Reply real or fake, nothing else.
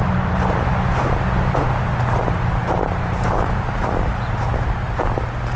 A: real